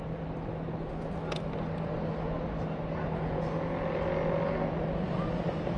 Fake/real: real